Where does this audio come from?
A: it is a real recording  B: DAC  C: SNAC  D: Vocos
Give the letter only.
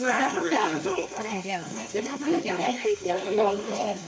C